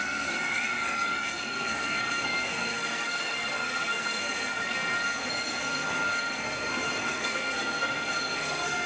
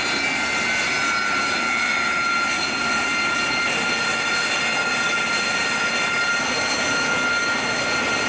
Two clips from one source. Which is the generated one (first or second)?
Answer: first